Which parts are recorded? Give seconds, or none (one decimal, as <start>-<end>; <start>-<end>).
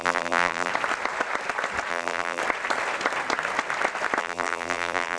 0.7-1.9; 2.4-4.2